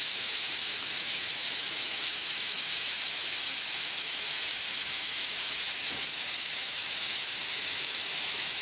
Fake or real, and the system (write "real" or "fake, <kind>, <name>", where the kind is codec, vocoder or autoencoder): fake, autoencoder, DAC-VAE